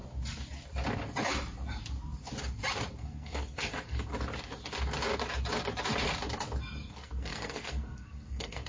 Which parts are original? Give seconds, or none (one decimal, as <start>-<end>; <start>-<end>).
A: 0.0-3.0; 4.1-7.0